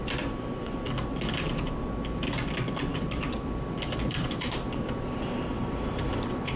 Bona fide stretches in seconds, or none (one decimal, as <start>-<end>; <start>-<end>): 0.0-2.9; 4.5-6.6